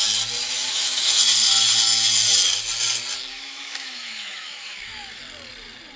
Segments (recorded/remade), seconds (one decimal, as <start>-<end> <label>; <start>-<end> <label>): 0.0-0.4 recorded; 0.4-1.2 remade; 1.2-3.3 recorded; 3.3-5.2 remade; 5.2-6.0 recorded